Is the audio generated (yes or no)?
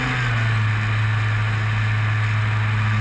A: no